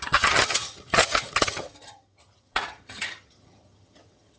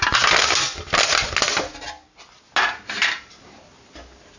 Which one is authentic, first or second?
second